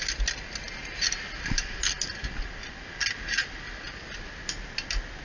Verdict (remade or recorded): recorded